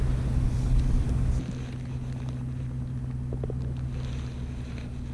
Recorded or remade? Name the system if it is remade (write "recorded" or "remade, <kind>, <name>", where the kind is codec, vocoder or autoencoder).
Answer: recorded